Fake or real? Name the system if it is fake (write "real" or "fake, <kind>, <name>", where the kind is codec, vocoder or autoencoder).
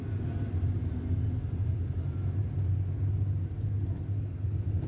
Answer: real